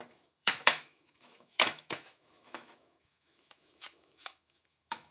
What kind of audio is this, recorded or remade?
remade